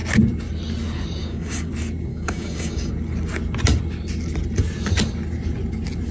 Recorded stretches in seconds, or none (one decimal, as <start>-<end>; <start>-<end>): 0.0-1.2; 1.7-2.1; 2.9-6.1